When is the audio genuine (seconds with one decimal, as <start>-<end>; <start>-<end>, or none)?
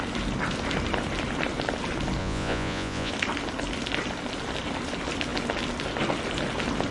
0.0-2.2; 3.1-6.9